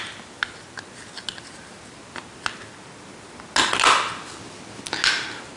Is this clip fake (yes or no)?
no